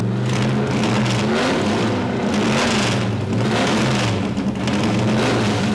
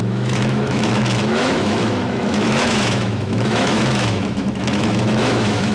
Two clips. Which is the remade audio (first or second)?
second